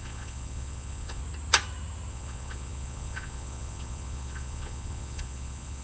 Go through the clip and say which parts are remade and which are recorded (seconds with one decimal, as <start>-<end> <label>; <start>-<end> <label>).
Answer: 0.0-1.2 remade; 1.2-2.1 recorded; 2.1-5.8 remade